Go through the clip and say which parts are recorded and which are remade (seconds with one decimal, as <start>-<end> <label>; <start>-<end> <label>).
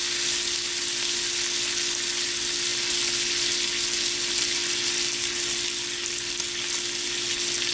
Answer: 0.0-7.7 recorded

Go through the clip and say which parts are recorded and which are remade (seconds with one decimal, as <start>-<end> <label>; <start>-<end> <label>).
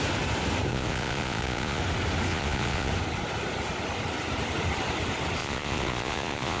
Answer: 0.0-0.7 recorded; 0.7-1.8 remade; 1.8-2.3 recorded; 2.3-2.9 remade; 2.9-5.4 recorded; 5.4-6.6 remade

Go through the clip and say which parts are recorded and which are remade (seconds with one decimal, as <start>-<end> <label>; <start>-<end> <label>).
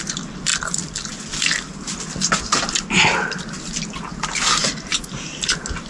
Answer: 0.0-5.9 recorded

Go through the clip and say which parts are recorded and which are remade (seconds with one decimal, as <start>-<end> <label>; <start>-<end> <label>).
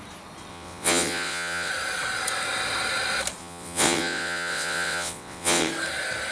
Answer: 0.0-0.5 recorded; 0.5-1.7 remade; 1.7-3.4 recorded; 3.4-5.7 remade; 5.7-6.3 recorded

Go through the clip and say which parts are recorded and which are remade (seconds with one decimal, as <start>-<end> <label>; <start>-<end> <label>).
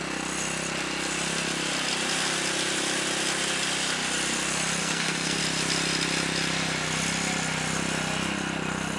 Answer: 0.0-4.8 recorded; 4.8-5.4 remade; 5.4-9.0 recorded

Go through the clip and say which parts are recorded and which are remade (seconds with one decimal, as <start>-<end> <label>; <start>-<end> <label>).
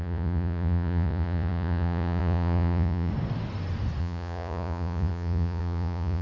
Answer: 0.0-3.1 remade; 3.1-4.0 recorded; 4.0-6.2 remade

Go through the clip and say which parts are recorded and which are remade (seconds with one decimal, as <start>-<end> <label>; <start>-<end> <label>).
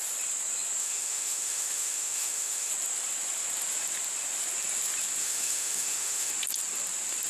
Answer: 0.0-0.8 recorded; 0.8-2.7 remade; 2.7-5.2 recorded; 5.2-6.3 remade; 6.3-7.3 recorded